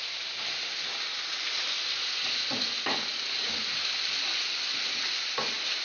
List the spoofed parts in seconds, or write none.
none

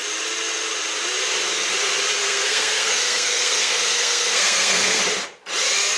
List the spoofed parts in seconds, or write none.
2.2-5.0 (codec, SNAC)

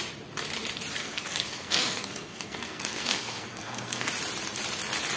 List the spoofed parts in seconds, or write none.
1.0-4.1 (codec, SNAC)

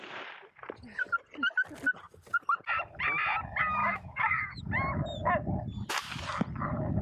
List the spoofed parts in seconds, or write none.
3.8-4.6 (autoencoder, DAC-VAE)

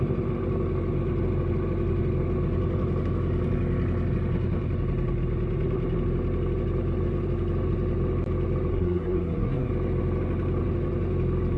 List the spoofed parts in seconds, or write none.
8.7-9.7 (codec, SNAC)

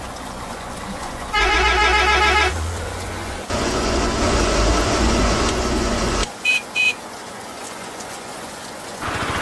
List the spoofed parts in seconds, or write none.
0.0-1.8 (vocoder, Vocos); 2.5-9.4

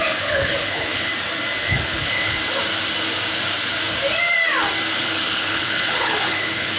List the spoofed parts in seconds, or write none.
0.0-1.1 (codec, HILCodec); 1.6-2.4; 5.0-6.8

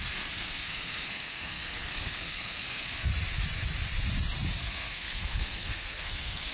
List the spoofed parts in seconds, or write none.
0.0-3.1 (codec, SNAC); 4.6-6.5